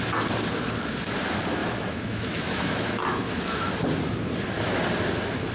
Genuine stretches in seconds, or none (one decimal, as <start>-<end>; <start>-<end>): 0.0-1.6; 3.7-5.5